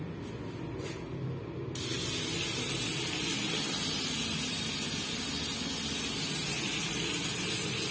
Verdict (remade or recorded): recorded